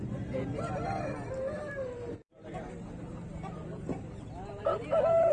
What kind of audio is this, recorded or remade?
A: remade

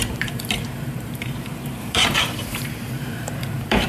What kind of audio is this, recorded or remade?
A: remade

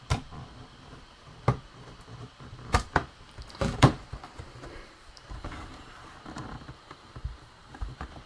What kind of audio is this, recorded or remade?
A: remade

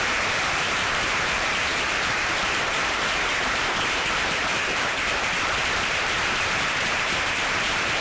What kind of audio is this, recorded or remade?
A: remade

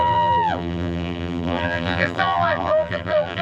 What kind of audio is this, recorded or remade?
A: remade